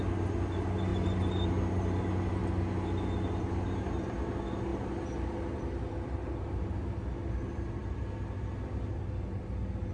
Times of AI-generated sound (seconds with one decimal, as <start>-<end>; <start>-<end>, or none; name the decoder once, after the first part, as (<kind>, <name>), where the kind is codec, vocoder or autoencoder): none